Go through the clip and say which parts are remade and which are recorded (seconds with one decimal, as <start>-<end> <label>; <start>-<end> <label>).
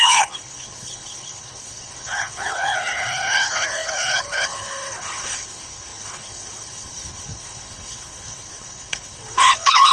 0.0-9.9 remade